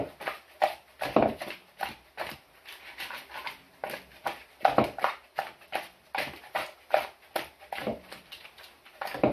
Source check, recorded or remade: recorded